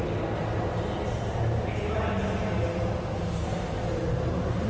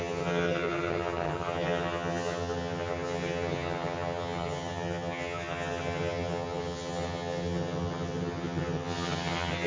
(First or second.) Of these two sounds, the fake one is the second